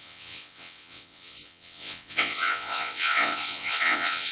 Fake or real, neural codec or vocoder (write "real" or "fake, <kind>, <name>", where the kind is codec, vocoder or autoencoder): fake, vocoder, WaveNeXt